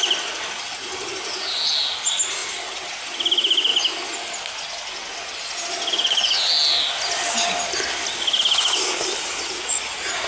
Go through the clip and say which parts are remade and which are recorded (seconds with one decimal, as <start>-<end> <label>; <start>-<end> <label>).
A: 0.0-9.3 recorded; 9.3-10.3 remade